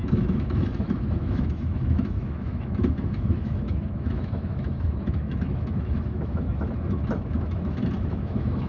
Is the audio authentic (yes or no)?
no